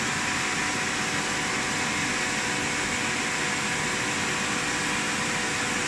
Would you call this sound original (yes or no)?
yes